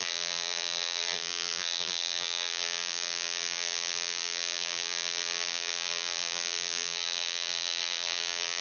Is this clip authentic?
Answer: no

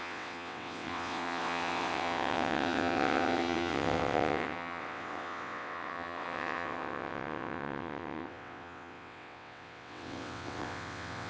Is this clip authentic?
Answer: no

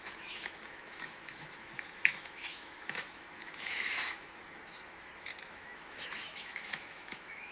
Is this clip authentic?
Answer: no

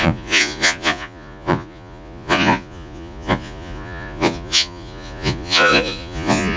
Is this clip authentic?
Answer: no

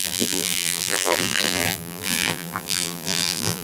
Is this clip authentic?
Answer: no